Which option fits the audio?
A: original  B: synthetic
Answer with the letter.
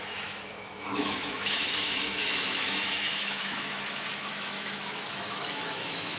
B